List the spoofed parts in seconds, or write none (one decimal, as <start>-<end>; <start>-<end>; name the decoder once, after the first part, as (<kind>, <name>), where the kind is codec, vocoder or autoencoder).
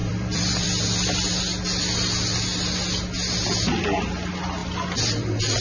0.0-0.8 (vocoder, BigVGAN v2); 4.6-5.6